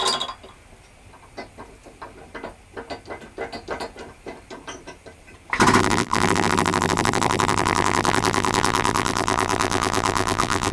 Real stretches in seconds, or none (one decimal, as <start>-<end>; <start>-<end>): 0.0-5.8